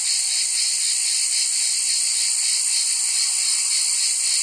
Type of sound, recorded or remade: recorded